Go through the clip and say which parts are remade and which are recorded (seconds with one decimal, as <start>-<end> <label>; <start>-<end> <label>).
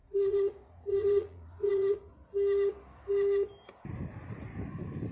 0.0-2.1 remade; 2.1-5.1 recorded